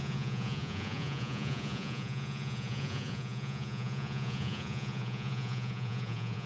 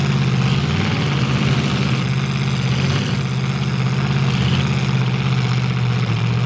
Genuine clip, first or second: second